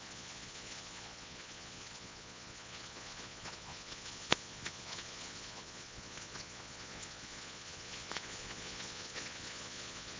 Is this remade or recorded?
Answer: remade